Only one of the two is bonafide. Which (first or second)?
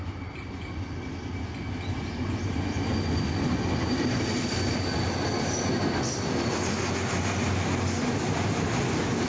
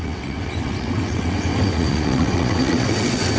first